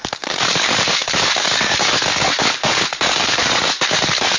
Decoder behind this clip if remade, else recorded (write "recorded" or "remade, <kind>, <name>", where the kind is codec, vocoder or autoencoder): remade, codec, DAC